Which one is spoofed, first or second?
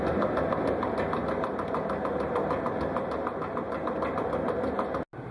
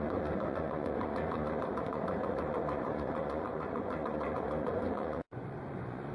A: second